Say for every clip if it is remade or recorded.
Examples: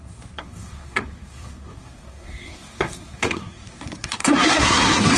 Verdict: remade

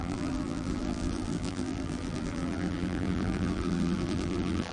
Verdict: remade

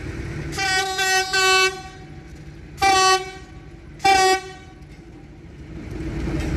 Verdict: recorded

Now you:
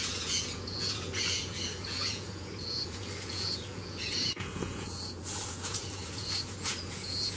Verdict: remade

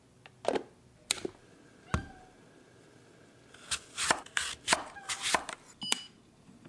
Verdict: recorded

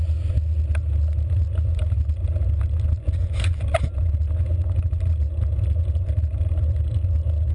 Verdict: recorded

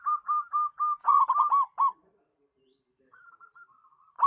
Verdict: remade